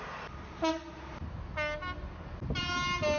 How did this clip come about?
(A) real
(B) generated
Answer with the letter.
A